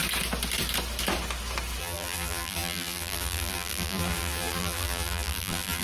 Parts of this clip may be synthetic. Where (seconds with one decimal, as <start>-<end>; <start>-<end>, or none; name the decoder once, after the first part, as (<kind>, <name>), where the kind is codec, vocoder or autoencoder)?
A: 1.8-5.8 (vocoder, BigVGAN v2)